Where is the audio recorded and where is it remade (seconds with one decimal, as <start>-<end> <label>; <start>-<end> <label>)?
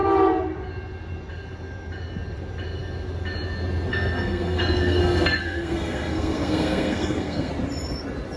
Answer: 0.0-3.9 recorded; 3.9-7.5 remade; 7.5-8.4 recorded